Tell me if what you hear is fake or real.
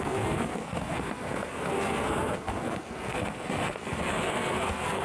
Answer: fake